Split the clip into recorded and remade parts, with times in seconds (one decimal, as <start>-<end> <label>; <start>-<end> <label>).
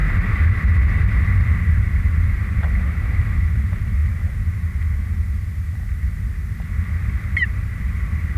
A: 0.0-4.0 remade; 4.0-7.5 recorded; 7.5-8.4 remade